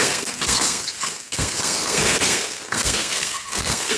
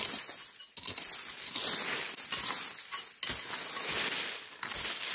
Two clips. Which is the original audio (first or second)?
second